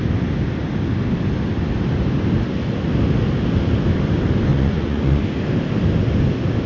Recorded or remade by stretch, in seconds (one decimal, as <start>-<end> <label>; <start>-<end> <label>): 0.0-4.5 recorded; 4.5-5.2 remade; 5.2-6.7 recorded